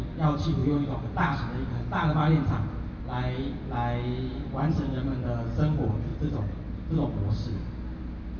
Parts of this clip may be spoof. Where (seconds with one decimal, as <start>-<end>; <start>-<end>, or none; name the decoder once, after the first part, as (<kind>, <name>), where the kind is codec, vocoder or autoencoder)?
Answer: 0.6-1.4 (vocoder, BigVGAN v2); 4.3-4.8; 6.1-6.8